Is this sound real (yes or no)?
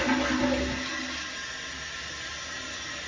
yes